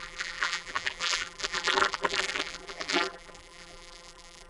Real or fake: fake